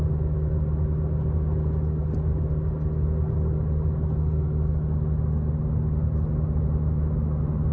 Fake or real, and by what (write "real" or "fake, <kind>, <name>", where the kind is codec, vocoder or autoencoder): real